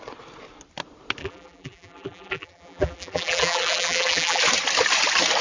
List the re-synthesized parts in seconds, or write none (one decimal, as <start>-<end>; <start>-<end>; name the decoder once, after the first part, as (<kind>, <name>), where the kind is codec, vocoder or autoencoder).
1.2-4.4 (vocoder, BigVGAN v2)